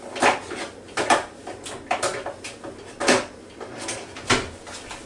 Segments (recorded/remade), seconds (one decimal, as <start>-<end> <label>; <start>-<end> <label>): 0.0-5.1 recorded